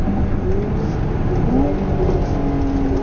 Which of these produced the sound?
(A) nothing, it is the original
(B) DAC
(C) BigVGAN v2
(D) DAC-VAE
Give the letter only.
A